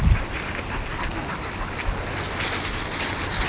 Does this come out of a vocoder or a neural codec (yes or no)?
no